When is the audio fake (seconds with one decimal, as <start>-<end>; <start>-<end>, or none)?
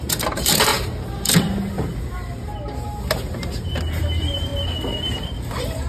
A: 0.0-4.5; 5.4-5.9